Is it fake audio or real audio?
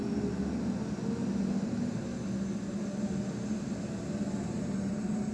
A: real